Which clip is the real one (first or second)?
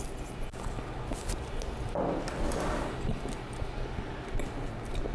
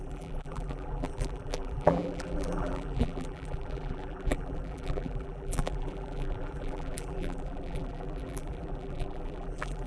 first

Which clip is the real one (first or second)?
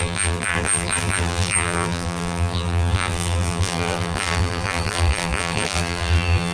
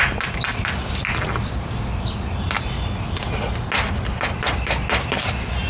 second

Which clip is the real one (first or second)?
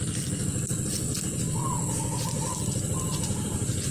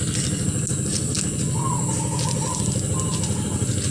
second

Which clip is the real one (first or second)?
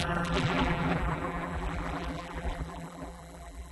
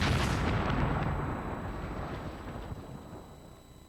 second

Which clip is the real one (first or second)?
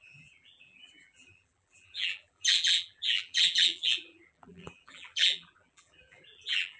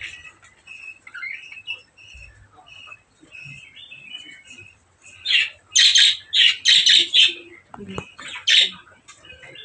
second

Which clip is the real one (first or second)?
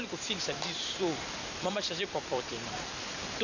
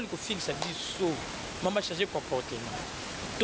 second